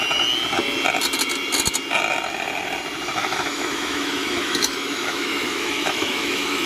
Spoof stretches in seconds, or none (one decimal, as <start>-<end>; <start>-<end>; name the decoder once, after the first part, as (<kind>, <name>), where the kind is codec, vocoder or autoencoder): 3.2-6.7 (autoencoder, DAC-VAE)